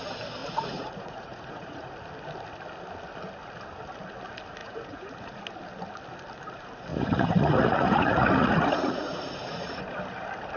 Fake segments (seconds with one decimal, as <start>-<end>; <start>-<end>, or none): 0.4-1.9; 4.6-5.4; 6.9-9.8